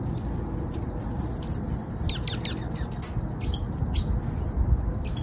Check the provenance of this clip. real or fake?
real